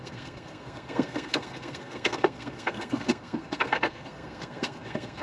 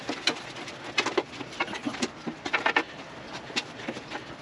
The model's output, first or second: first